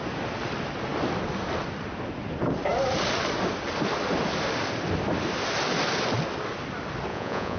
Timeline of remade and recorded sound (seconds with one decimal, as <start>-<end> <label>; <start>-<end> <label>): 0.0-7.1 recorded; 7.1-7.6 remade